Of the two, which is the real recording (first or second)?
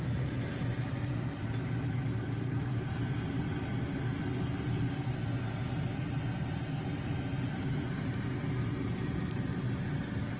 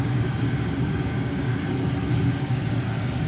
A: first